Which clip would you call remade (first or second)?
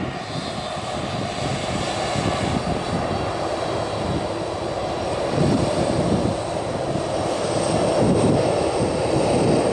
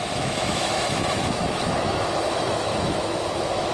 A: second